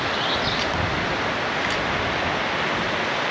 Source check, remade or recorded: recorded